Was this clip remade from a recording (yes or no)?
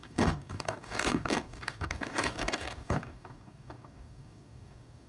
yes